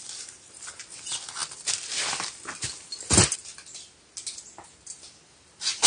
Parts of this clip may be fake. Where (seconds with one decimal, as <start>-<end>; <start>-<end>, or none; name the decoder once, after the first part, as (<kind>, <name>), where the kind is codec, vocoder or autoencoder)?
none